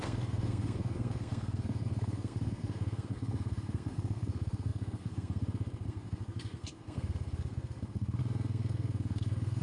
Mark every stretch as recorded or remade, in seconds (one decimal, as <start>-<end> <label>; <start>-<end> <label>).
0.0-9.6 remade